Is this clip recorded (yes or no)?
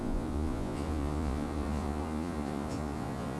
no